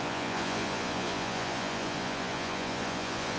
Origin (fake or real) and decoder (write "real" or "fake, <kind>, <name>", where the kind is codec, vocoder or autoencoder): fake, vocoder, Vocos